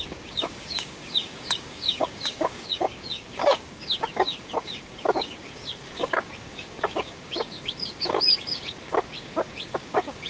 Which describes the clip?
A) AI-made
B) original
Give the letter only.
A